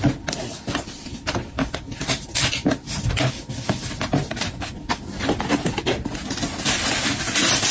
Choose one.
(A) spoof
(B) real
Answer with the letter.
A